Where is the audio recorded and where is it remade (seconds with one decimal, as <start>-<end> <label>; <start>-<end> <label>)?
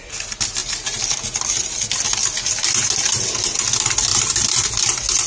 0.0-4.1 recorded; 4.1-4.8 remade; 4.8-5.3 recorded